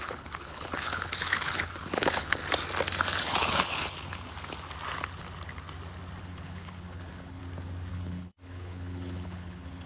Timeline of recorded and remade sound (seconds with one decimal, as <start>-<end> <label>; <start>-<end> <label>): 0.0-2.4 remade; 2.4-3.2 recorded; 3.2-4.3 remade; 4.3-6.2 recorded; 6.2-7.4 remade; 7.4-7.9 recorded; 7.9-9.9 remade